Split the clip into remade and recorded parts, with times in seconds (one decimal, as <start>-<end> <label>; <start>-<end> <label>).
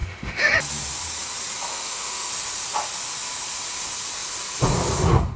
0.0-0.5 remade; 0.5-1.7 recorded; 1.7-2.3 remade; 2.3-5.4 recorded